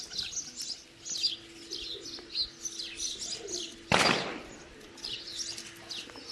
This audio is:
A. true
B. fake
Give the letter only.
A